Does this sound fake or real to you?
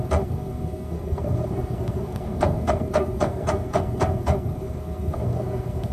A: fake